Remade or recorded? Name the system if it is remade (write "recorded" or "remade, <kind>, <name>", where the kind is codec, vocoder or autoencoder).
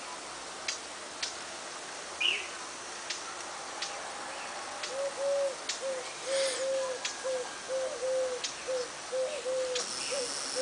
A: recorded